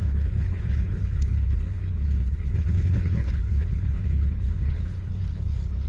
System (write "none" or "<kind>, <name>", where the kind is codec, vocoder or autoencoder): codec, HILCodec